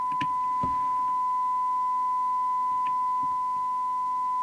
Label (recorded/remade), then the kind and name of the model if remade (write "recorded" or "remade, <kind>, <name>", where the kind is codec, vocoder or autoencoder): recorded